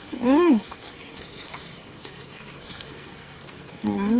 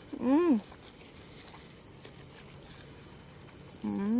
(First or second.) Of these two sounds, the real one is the second